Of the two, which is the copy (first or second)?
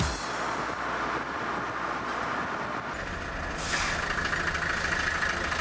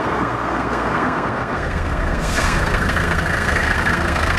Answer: second